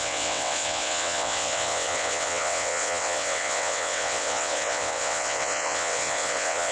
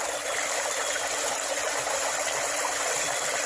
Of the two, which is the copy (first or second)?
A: first